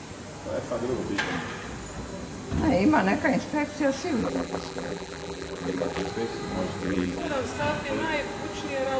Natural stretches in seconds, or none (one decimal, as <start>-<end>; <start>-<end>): 0.0-4.2; 6.1-6.8; 7.3-9.0